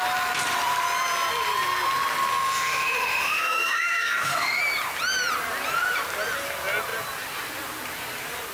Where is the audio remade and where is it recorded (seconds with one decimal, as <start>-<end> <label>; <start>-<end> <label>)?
0.0-2.3 recorded; 2.3-4.6 remade; 4.6-8.5 recorded